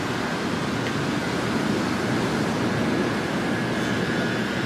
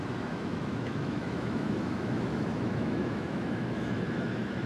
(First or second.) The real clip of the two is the first